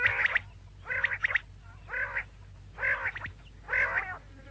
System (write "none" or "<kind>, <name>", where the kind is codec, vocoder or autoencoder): none